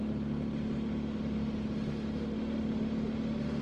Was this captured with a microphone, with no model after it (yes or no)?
yes